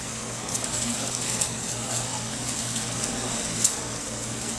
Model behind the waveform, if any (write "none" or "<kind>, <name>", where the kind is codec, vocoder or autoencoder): codec, SNAC